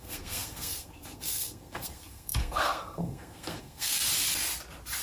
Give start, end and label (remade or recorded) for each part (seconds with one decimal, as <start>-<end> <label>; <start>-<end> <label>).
0.0-4.0 remade; 4.0-5.0 recorded